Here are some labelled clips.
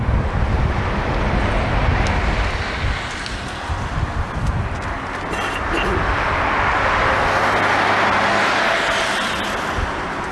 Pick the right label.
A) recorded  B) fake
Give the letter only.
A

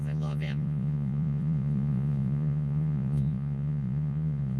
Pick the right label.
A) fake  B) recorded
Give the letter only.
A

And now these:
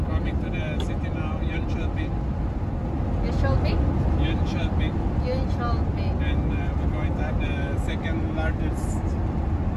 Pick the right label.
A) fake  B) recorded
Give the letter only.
B